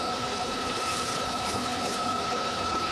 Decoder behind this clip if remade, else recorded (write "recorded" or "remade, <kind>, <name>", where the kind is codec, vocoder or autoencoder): remade, codec, HILCodec